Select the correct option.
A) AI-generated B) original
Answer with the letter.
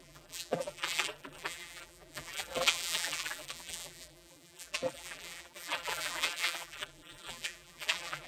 A